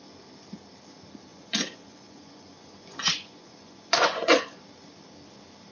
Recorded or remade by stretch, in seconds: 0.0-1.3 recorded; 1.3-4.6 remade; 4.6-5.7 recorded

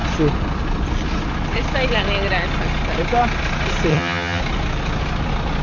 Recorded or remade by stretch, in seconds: 0.0-3.9 recorded; 3.9-4.4 remade; 4.4-5.6 recorded